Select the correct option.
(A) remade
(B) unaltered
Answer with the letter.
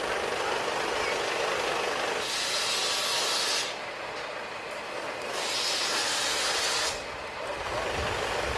B